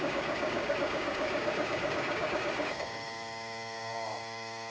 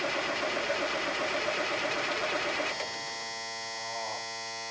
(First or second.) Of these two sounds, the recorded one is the second